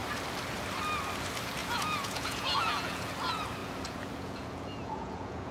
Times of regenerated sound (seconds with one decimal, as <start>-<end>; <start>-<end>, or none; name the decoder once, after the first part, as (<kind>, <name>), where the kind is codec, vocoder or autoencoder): 1.6-3.1 (vocoder, Vocos); 3.6-5.5